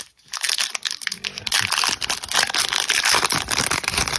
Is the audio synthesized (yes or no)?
no